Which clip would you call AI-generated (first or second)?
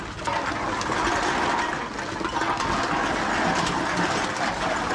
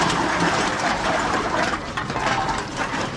second